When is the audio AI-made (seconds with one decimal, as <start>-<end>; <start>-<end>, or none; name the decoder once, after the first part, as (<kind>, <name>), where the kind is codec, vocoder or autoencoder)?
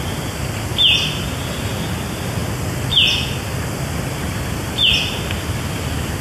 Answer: none